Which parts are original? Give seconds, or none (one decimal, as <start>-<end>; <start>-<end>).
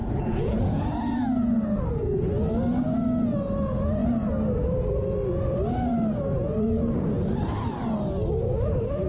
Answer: 1.5-9.1